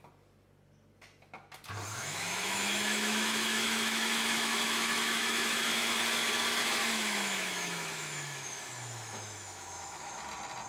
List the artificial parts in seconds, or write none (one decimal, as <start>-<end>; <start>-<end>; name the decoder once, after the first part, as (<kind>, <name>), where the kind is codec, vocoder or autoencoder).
1.9-5.9 (autoencoder, DAC-VAE); 6.8-10.2

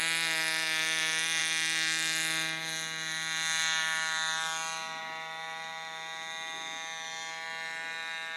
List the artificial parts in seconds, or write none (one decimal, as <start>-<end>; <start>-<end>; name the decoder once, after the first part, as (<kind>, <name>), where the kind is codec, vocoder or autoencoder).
none

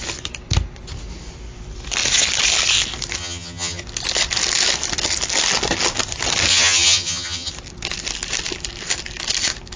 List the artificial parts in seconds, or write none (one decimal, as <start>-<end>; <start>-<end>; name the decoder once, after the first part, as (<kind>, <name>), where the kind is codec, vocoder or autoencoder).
3.2-3.8 (vocoder, HiFi-GAN); 6.5-7.5

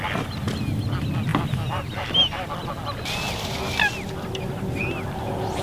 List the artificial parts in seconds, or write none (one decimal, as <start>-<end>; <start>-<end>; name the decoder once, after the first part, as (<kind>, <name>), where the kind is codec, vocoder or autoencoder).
none

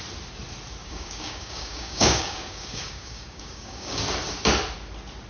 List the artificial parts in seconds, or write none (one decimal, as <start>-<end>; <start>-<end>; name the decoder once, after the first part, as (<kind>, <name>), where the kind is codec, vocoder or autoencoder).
0.8-4.0 (codec, DAC)

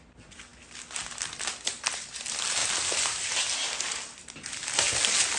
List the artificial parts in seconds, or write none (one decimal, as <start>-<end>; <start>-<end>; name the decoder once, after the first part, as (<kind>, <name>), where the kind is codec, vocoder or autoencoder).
none